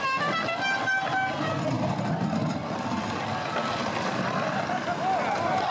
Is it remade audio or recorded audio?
recorded